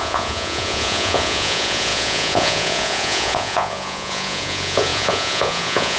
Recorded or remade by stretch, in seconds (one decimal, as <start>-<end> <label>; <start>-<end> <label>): 0.0-6.0 remade